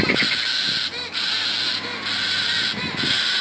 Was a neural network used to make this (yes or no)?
no